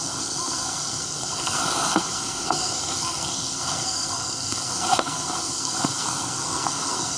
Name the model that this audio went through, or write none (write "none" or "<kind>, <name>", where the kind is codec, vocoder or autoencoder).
codec, SNAC